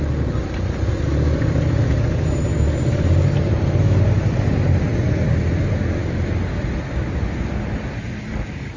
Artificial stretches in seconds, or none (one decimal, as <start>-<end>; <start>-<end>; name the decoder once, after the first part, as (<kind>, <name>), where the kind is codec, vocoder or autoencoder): none